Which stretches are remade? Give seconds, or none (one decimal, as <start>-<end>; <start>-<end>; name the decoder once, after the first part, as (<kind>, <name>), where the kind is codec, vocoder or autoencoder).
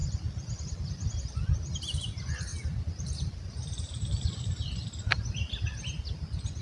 none